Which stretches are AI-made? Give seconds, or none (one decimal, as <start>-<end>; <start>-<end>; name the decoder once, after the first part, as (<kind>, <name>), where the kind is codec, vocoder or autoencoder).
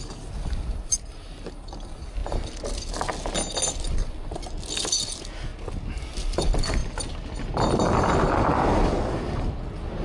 0.0-2.2 (vocoder, BigVGAN v2); 3.8-5.5; 6.2-6.8; 7.5-10.0